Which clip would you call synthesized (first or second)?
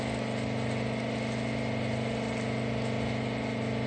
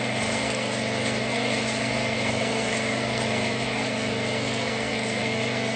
second